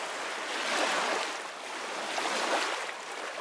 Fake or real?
real